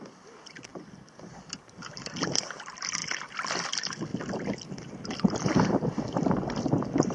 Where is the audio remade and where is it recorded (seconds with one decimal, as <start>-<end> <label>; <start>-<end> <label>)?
0.0-7.1 recorded